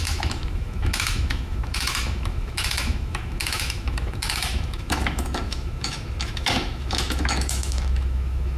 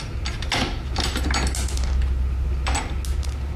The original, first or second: second